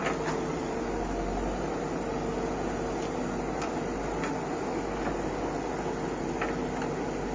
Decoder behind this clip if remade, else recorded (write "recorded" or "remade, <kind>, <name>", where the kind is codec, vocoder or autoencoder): recorded